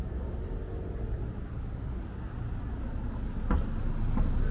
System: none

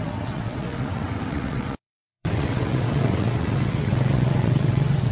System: vocoder, WaveNeXt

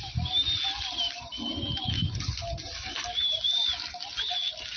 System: none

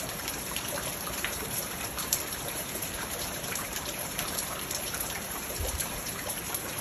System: vocoder, BigVGAN v2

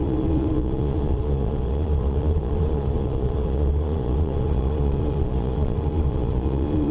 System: vocoder, Vocos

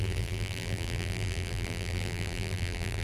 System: vocoder, BigVGAN v2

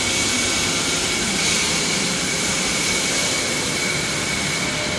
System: none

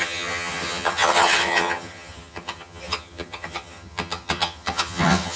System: vocoder, HiFi-GAN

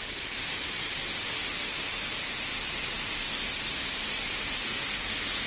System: none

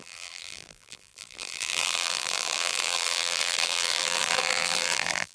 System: vocoder, BigVGAN v2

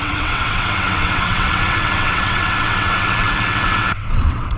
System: vocoder, WaveNeXt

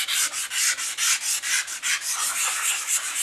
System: none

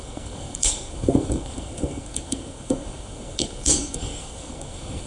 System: codec, SNAC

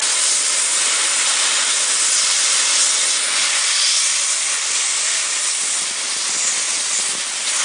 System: none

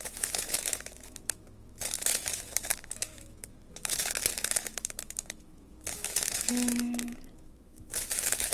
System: autoencoder, DAC-VAE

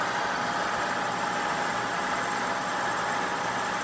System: none